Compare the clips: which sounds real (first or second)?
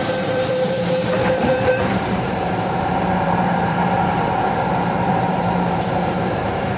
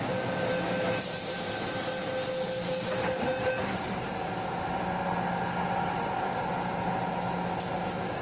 second